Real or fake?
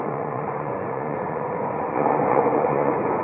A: fake